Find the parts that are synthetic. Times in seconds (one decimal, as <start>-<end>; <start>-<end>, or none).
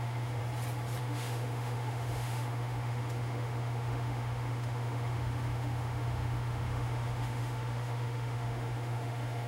0.0-0.4; 1.0-9.5